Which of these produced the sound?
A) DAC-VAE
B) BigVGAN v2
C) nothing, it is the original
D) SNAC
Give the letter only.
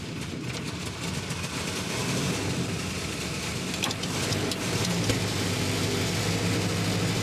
C